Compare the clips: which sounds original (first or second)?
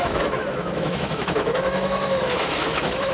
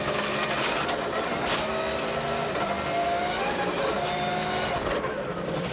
second